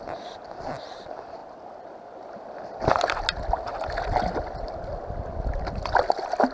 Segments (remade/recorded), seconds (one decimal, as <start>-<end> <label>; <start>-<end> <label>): 0.0-6.5 recorded